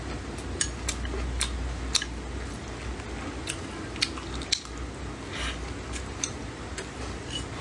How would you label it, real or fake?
real